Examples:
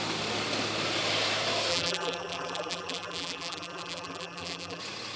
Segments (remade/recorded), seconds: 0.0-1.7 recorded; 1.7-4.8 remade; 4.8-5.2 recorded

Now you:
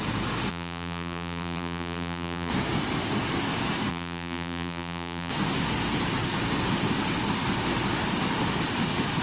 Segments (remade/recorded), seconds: 0.0-0.5 recorded; 0.5-2.5 remade; 2.5-3.9 recorded; 3.9-5.3 remade; 5.3-9.2 recorded

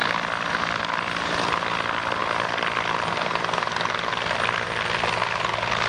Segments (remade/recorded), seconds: 0.0-5.9 recorded

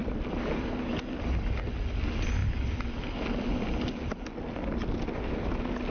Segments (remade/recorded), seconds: 0.0-5.9 recorded

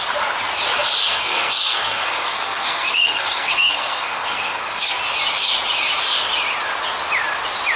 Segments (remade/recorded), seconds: 0.0-1.0 recorded; 1.0-5.0 remade; 5.0-7.8 recorded

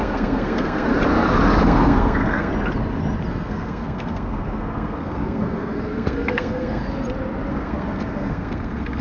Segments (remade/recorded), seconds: 0.0-0.9 remade; 0.9-1.6 recorded; 1.6-2.5 remade; 2.5-3.3 recorded; 3.3-6.8 remade; 6.8-7.5 recorded; 7.5-9.0 remade

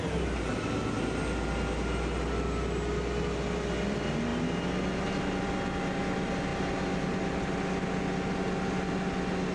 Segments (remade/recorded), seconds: 0.0-9.5 recorded

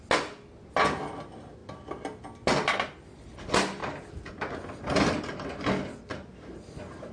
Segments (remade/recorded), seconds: 0.0-7.1 recorded